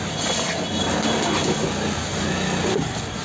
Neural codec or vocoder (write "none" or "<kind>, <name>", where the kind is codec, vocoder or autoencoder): none